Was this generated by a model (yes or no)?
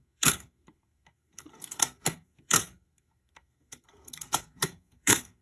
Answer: yes